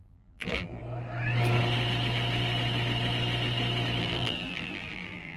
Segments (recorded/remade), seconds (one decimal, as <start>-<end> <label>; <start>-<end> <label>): 0.0-0.8 remade; 0.8-4.0 recorded; 4.0-5.4 remade